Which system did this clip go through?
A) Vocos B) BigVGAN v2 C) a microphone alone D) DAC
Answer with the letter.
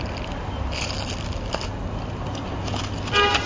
C